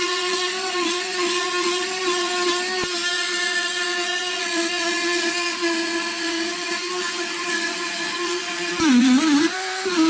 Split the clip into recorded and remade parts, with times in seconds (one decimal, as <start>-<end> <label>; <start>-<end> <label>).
0.0-2.3 remade; 2.3-3.1 recorded; 3.1-10.1 remade